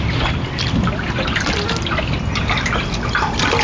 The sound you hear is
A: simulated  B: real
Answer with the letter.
B